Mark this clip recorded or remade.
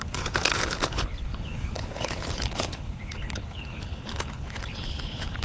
remade